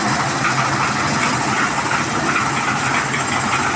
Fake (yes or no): no